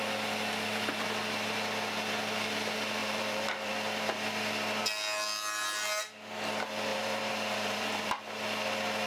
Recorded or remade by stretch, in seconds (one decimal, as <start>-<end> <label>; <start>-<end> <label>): 0.0-3.0 recorded; 3.0-3.7 remade; 3.7-6.9 recorded; 6.9-8.2 remade; 8.2-9.1 recorded